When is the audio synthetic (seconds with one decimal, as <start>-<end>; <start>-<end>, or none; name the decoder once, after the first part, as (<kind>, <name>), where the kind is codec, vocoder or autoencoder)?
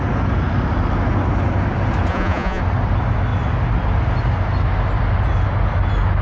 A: 2.1-2.6 (vocoder, Vocos)